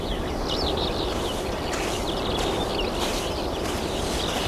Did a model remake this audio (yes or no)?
no